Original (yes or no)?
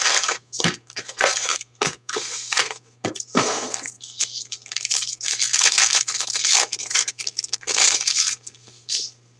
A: no